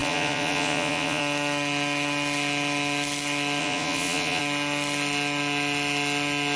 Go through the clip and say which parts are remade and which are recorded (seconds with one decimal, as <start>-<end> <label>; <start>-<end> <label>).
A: 0.0-1.2 remade; 1.2-3.6 recorded; 3.6-4.4 remade; 4.4-6.6 recorded